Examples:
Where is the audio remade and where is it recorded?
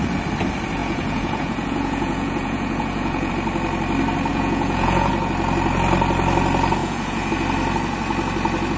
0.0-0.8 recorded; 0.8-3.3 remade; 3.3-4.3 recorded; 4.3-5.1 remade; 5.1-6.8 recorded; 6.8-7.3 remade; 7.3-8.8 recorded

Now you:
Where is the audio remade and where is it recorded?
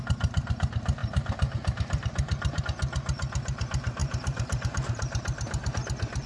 0.0-1.0 recorded; 1.0-2.6 remade; 2.6-4.0 recorded; 4.0-5.7 remade; 5.7-6.3 recorded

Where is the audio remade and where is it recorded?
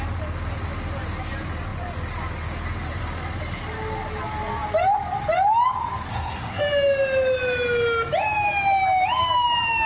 0.0-6.1 recorded; 6.1-6.6 remade; 6.6-9.9 recorded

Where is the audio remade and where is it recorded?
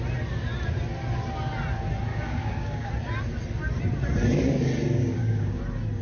0.0-2.1 recorded; 2.1-2.9 remade; 2.9-5.0 recorded; 5.0-5.6 remade; 5.6-6.0 recorded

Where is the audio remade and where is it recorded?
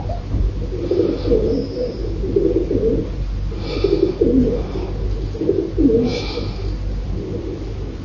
0.0-8.0 recorded